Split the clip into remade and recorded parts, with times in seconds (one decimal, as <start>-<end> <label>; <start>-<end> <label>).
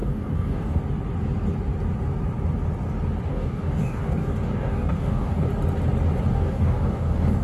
0.0-0.8 remade; 0.8-3.3 recorded; 3.3-5.5 remade; 5.5-6.3 recorded; 6.3-7.4 remade